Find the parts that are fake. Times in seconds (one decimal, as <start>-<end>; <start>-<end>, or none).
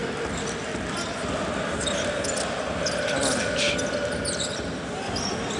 none